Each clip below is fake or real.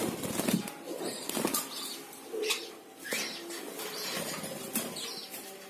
real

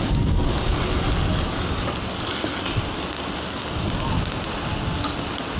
real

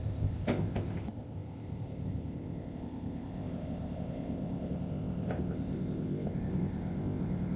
fake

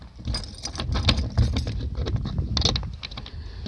real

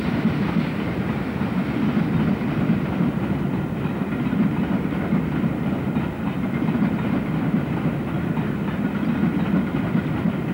real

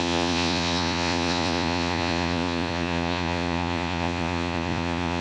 fake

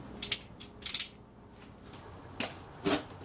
real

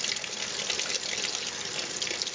real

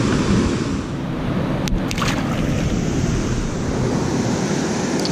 real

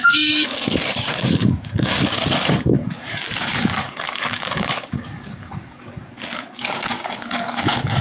fake